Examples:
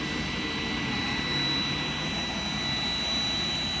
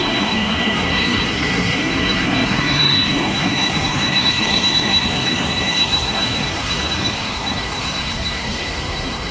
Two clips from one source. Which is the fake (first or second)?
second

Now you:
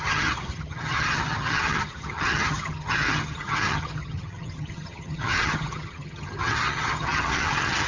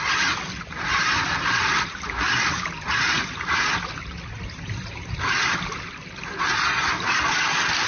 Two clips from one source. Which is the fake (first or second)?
first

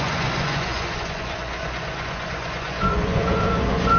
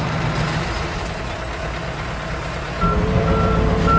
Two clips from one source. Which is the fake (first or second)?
first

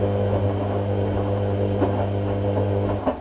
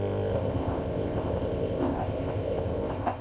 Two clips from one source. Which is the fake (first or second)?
second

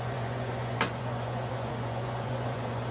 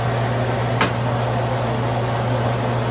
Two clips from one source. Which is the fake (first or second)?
first